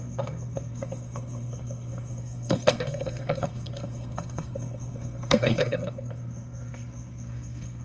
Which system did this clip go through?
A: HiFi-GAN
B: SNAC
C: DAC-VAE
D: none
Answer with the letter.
B